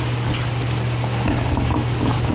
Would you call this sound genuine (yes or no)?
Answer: yes